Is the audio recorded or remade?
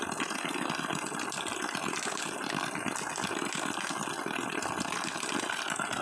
recorded